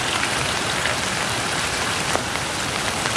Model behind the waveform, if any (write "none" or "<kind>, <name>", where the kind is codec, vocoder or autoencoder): none